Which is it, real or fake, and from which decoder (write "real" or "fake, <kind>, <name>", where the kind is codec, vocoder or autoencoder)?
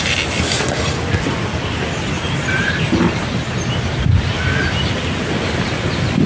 real